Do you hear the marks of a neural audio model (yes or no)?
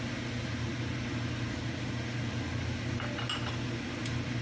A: no